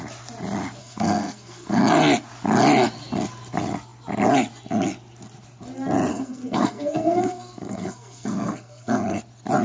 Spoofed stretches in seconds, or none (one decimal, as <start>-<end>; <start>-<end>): 0.8-1.8; 6.1-9.2